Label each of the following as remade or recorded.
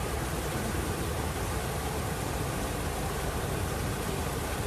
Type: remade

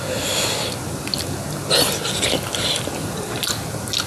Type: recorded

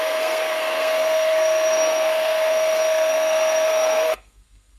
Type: remade